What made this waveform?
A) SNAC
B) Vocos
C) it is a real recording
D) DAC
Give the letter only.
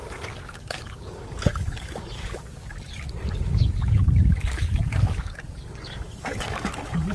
D